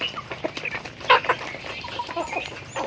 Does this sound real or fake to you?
real